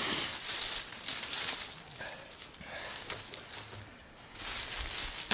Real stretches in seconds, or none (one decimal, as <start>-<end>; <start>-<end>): 0.0-5.3